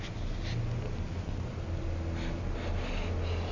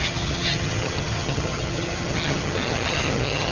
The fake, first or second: second